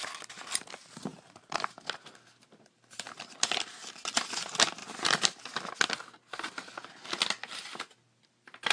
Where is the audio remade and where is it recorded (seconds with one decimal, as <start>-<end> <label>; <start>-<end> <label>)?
0.0-1.1 recorded; 1.1-1.7 remade; 1.7-4.8 recorded; 4.8-5.4 remade; 5.4-8.7 recorded